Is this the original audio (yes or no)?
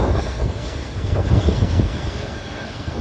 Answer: no